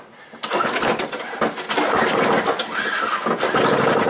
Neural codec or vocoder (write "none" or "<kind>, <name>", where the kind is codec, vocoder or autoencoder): none